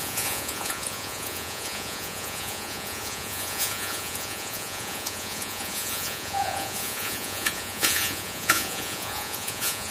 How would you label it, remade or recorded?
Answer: remade